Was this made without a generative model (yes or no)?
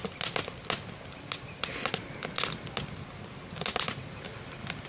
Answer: yes